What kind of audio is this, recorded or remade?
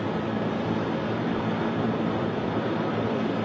remade